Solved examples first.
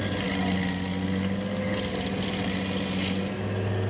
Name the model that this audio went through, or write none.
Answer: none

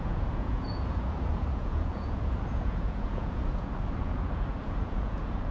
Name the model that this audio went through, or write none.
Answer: vocoder, Vocos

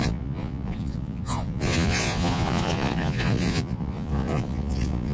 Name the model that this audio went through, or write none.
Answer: vocoder, Vocos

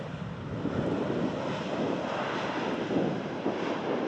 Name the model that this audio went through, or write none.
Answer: none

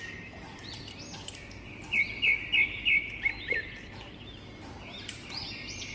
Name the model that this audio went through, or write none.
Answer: none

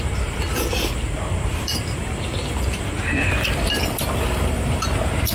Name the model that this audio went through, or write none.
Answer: none